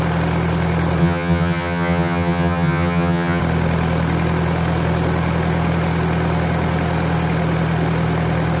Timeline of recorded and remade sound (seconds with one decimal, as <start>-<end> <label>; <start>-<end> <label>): 0.0-1.0 recorded; 1.0-3.4 remade; 3.4-8.6 recorded